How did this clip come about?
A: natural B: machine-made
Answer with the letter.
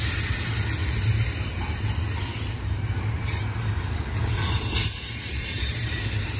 B